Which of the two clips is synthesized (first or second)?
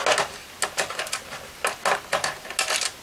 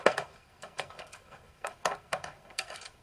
second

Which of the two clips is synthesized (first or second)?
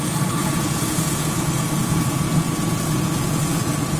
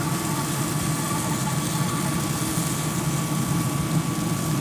first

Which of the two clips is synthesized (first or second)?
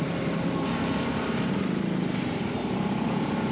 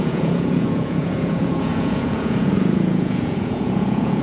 second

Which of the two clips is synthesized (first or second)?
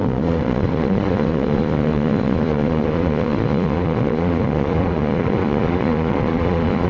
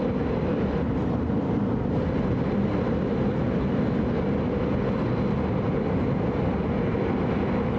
first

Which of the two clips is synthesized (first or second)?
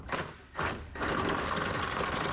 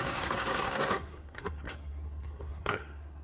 second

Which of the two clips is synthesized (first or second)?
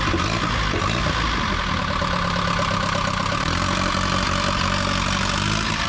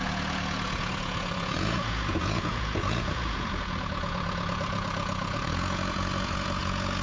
second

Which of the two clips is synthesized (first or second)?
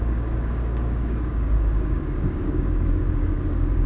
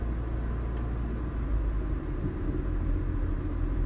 first